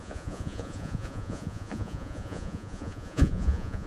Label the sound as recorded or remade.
remade